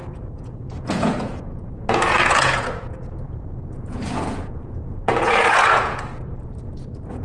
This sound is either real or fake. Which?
fake